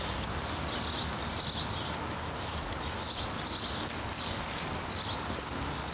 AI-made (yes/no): no